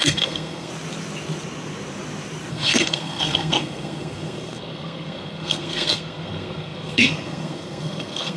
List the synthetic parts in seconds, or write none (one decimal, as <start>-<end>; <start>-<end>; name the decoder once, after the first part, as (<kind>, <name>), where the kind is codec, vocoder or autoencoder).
0.0-0.7 (codec, SNAC); 2.5-8.4